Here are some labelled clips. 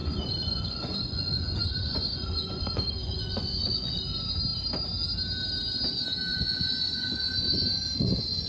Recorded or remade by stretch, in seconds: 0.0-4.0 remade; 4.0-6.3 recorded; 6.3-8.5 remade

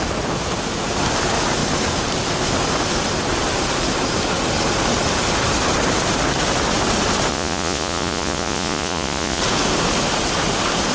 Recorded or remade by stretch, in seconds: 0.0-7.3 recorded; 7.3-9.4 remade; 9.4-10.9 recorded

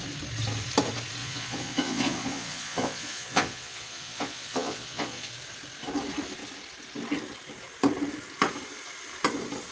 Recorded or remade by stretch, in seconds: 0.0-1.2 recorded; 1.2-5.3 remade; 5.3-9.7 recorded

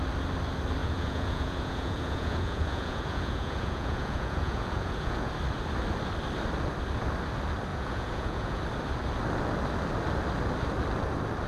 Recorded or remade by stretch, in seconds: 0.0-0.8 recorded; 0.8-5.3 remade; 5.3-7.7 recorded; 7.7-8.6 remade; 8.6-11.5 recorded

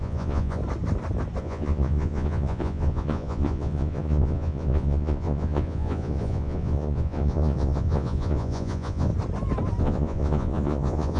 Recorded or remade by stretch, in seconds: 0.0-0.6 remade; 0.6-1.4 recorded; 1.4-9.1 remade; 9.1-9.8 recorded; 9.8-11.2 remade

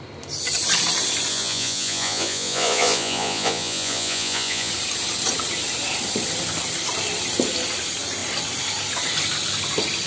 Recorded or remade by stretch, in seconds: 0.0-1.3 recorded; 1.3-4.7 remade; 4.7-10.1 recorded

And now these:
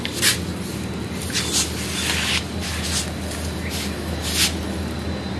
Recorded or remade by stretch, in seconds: 0.0-5.4 recorded